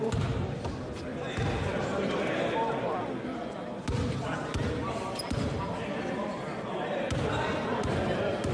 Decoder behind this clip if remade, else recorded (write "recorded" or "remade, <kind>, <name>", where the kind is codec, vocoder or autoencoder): recorded